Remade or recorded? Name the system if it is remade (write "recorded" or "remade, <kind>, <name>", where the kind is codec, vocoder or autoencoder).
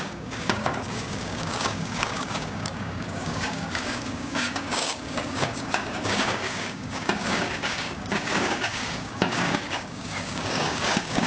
remade, codec, DAC